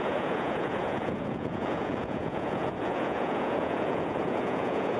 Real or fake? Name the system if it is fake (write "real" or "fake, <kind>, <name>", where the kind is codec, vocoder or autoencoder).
fake, vocoder, Vocos